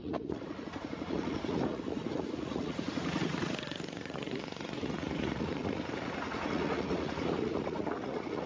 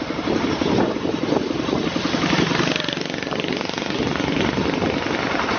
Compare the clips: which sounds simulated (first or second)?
first